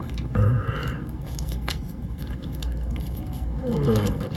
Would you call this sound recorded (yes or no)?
no